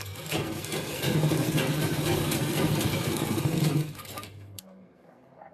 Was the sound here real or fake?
fake